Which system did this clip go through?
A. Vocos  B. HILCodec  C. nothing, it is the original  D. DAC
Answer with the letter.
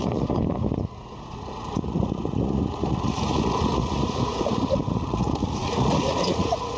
A